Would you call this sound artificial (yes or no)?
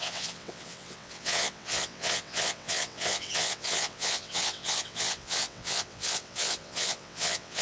yes